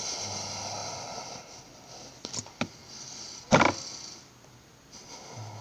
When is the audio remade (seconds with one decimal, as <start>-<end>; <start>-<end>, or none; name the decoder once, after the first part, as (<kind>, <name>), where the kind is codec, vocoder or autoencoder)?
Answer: 0.8-1.6 (vocoder, BigVGAN v2)